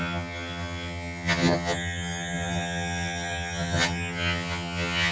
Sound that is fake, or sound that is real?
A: fake